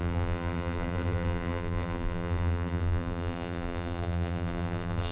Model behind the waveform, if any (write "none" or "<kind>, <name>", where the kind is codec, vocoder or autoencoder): vocoder, BigVGAN v2